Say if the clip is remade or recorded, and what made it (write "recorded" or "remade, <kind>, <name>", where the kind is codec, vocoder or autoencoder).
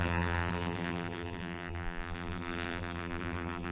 remade, vocoder, BigVGAN v2